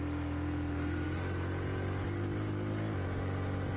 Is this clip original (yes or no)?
yes